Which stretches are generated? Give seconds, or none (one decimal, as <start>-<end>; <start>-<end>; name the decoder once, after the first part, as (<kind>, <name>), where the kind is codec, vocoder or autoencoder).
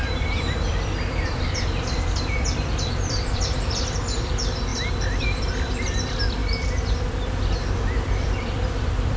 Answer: 0.0-4.7 (vocoder, BigVGAN v2); 5.2-6.4; 7.8-9.2